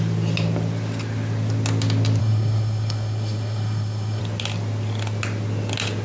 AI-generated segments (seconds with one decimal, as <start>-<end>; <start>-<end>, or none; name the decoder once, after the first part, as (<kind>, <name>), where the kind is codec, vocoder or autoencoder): 2.2-4.2 (codec, SNAC)